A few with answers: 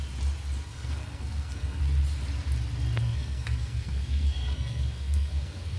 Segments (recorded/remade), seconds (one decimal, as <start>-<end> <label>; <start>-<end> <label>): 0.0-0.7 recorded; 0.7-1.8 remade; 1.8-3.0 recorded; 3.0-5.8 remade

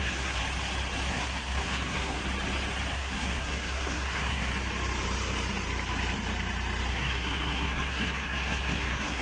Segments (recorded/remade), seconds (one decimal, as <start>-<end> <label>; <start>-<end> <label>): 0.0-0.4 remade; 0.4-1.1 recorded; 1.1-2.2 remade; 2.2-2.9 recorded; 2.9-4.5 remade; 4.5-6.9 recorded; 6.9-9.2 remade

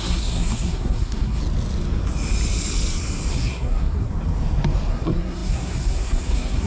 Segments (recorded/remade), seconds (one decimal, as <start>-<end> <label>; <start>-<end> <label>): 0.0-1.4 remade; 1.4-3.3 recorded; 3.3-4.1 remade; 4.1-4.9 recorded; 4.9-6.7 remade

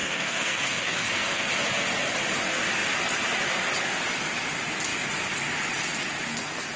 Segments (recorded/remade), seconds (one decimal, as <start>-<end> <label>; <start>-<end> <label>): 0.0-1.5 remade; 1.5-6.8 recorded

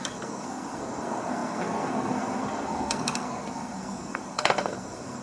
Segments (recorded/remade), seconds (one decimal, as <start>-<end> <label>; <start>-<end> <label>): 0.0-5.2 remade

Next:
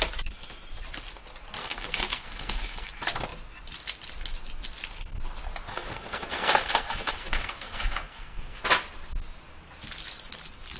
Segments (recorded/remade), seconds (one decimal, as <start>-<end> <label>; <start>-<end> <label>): 0.0-1.6 recorded; 1.6-2.9 remade; 2.9-5.7 recorded; 5.7-8.6 remade; 8.6-10.8 recorded